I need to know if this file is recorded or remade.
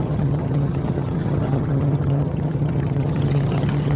remade